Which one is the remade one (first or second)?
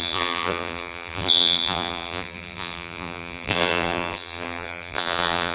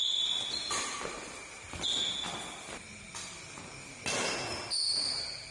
first